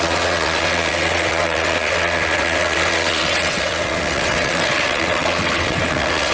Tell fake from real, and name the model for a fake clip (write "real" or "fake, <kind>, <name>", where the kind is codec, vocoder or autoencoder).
fake, vocoder, WaveNeXt